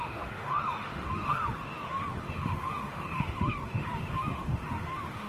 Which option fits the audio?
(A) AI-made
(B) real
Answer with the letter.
A